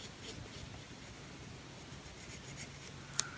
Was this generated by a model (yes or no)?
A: no